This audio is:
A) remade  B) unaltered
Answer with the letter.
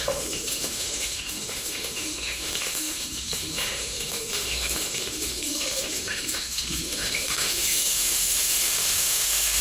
A